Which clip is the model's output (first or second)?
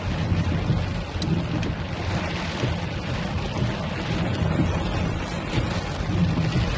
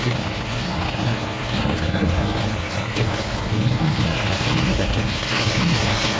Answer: second